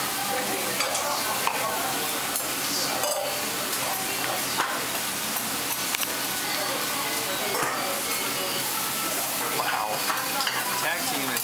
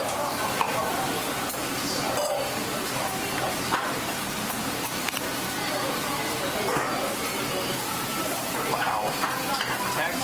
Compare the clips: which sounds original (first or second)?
first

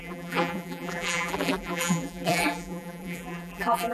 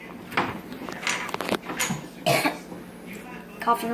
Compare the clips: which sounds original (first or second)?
second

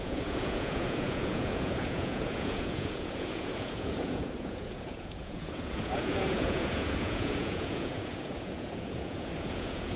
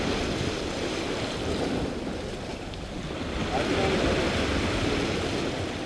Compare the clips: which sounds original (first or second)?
second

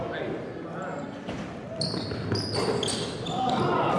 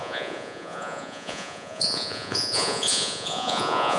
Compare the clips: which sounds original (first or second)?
first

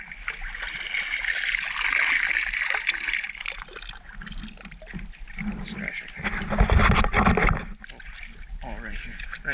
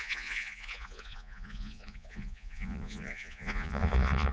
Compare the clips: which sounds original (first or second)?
first